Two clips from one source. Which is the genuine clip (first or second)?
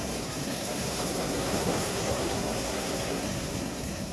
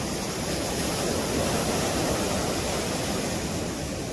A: second